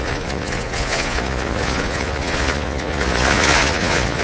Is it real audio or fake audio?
fake